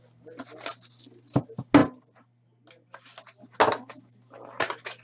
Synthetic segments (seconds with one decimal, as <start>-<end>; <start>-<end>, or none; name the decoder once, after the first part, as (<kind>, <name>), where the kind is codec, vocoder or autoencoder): none